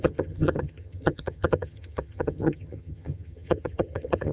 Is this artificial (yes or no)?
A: yes